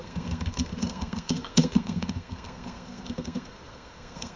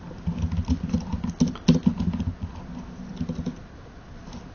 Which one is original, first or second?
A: second